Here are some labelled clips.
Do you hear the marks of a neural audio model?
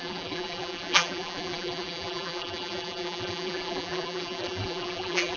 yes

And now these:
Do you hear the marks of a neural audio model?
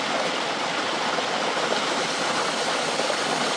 no